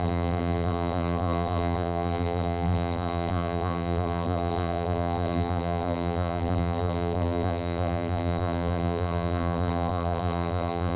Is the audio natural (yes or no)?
no